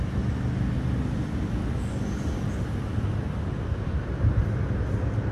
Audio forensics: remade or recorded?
recorded